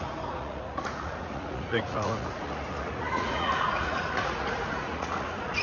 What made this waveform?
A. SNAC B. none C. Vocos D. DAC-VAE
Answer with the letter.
C